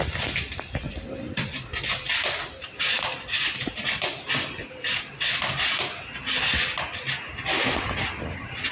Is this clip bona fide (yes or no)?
yes